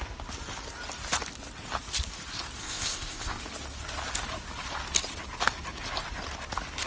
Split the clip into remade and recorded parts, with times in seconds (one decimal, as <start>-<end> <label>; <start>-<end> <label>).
0.0-2.6 recorded; 2.6-3.4 remade; 3.4-6.9 recorded